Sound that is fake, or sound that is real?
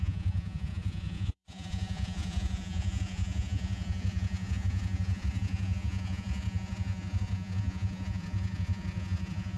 fake